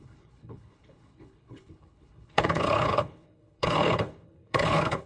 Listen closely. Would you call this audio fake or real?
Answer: fake